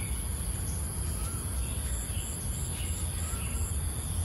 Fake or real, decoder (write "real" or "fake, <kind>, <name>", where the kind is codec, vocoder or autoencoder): real